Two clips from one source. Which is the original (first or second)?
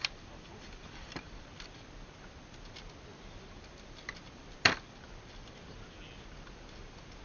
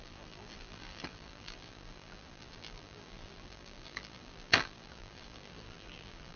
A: first